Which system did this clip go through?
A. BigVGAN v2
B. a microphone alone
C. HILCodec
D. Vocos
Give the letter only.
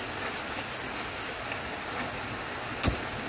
B